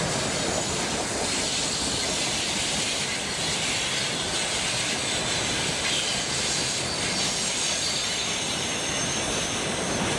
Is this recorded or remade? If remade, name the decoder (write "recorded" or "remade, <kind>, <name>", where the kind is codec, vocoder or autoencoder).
recorded